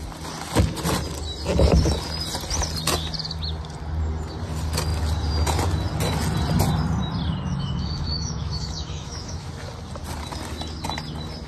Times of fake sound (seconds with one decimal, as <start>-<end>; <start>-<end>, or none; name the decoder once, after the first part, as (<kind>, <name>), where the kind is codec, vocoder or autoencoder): 7.5-9.5 (autoencoder, DAC-VAE)